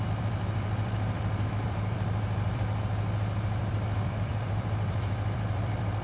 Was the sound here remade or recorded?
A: remade